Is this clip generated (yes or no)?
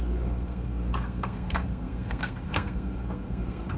yes